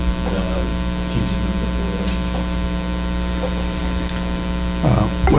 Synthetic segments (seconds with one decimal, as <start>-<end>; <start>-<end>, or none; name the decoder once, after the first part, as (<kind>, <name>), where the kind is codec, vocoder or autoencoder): none